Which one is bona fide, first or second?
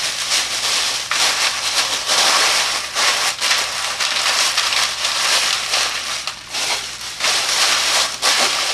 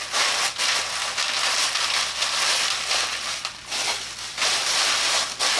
second